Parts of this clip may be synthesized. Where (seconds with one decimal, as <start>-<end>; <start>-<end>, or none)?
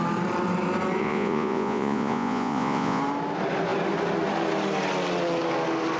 1.0-3.0